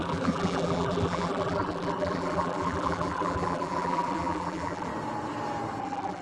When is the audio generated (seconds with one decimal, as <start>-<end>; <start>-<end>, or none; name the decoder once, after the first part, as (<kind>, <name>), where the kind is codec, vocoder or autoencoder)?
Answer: 0.0-4.9 (vocoder, BigVGAN v2); 5.8-6.2

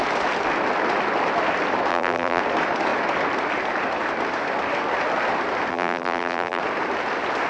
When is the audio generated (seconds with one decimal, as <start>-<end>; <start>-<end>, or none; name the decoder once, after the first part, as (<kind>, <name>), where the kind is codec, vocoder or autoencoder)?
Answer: 1.9-2.4 (vocoder, BigVGAN v2); 5.7-6.6

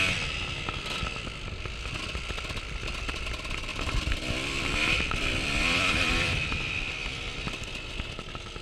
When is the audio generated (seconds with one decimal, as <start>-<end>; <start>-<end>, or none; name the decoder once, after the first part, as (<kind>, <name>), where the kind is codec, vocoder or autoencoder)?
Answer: 3.7-6.9 (vocoder, BigVGAN v2)

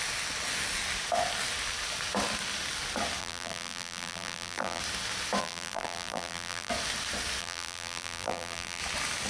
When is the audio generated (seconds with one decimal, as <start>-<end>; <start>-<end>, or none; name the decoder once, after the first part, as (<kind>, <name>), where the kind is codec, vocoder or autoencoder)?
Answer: 3.2-4.8 (vocoder, BigVGAN v2); 5.4-6.7; 7.4-8.8